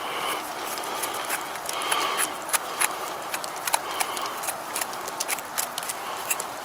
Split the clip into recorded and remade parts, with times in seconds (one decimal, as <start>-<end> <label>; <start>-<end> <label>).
0.0-5.2 remade; 5.2-5.8 recorded; 5.8-6.6 remade